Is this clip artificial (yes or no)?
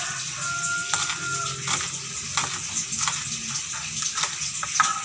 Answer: no